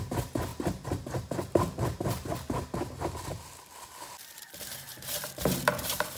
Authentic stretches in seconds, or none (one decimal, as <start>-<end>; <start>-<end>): 0.5-4.2